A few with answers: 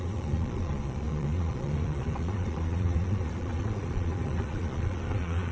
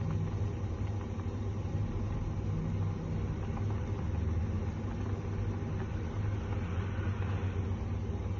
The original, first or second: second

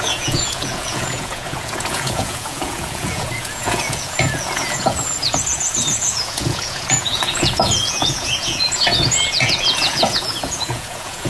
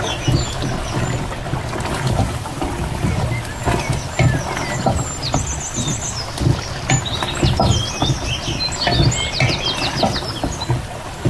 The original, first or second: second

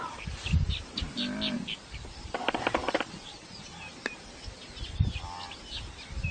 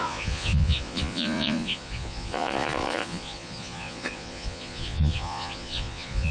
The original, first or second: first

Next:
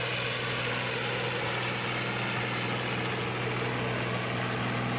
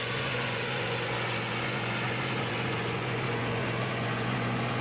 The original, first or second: first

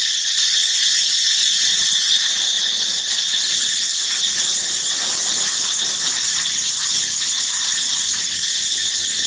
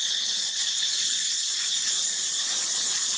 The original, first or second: first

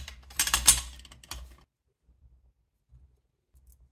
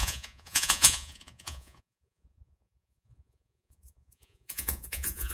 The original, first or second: first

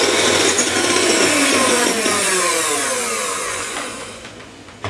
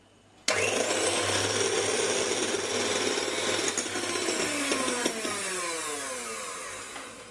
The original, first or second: second